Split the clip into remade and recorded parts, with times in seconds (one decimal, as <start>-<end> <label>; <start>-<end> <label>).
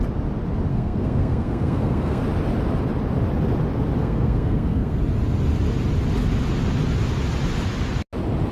0.0-0.7 recorded; 0.7-2.2 remade; 2.2-4.0 recorded; 4.0-5.0 remade; 5.0-8.5 recorded